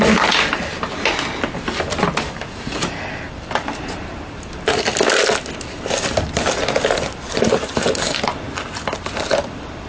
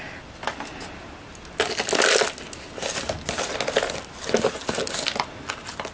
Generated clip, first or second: first